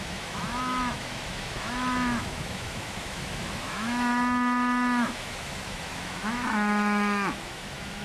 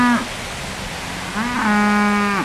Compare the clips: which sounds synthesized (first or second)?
first